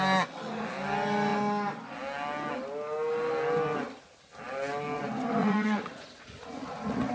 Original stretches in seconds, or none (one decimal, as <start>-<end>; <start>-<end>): 0.0-5.4